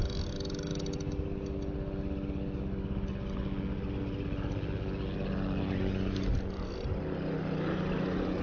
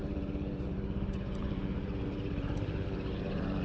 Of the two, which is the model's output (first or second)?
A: second